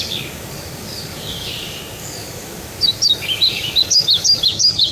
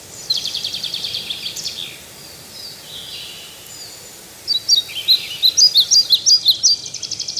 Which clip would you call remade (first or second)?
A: first